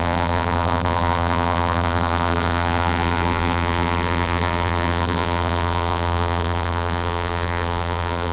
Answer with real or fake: fake